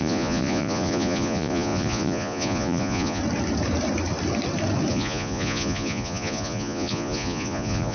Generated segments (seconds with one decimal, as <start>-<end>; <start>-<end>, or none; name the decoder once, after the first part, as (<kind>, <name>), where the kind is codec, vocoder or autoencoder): 0.0-3.2 (vocoder, Vocos); 4.9-7.9